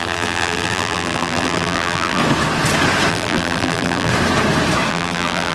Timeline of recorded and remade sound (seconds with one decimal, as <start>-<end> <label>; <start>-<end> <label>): 0.0-2.2 remade; 2.2-3.1 recorded; 3.1-4.1 remade; 4.1-4.9 recorded; 4.9-5.5 remade